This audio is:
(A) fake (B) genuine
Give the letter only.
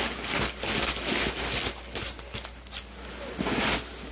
B